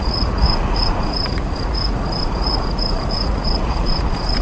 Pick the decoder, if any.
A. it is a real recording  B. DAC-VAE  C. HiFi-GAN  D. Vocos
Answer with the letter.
D